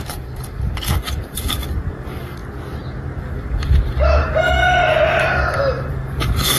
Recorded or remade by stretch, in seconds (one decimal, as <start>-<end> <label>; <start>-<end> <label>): 0.0-2.4 remade; 2.4-3.2 recorded; 3.2-4.6 remade; 4.6-5.9 recorded; 5.9-6.6 remade